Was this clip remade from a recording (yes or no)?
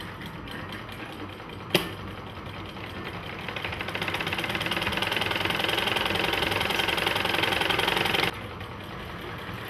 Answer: no